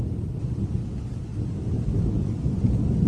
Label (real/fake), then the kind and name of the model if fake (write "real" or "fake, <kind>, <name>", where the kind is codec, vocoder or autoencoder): real